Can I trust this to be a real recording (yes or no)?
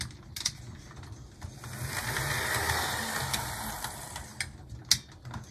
yes